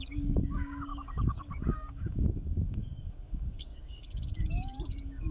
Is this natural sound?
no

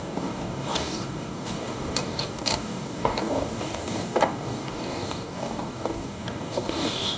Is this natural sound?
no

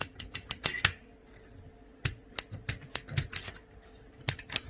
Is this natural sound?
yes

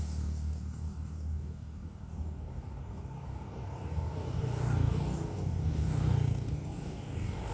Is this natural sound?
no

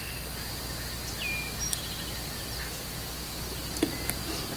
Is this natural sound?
yes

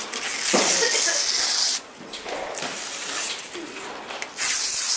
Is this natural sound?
yes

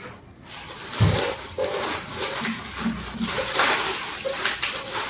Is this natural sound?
yes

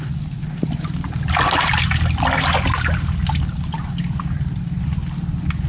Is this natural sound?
yes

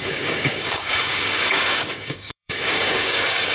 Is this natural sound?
no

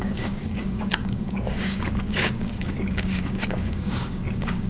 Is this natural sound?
no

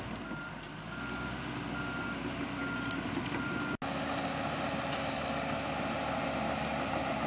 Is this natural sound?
yes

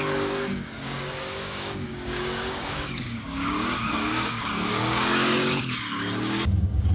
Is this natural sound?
no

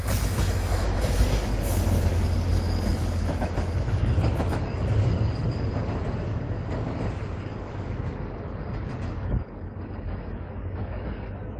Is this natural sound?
no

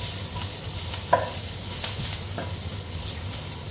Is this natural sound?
yes